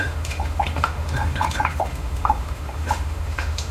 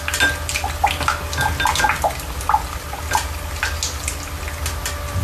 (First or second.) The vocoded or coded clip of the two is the first